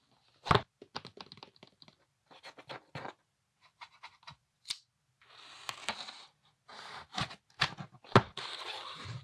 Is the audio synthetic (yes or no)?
no